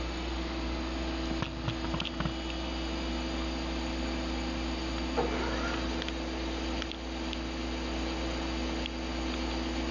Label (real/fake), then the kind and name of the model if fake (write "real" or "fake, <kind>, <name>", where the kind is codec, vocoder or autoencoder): real